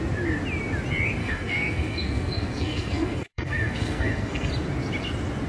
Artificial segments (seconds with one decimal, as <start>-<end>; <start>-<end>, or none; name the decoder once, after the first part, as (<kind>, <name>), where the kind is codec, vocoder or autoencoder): 1.2-4.5 (codec, SNAC)